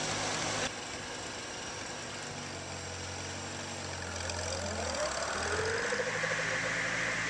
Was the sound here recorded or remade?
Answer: recorded